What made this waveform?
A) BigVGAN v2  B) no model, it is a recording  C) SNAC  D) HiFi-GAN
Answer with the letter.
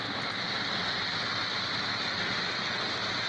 B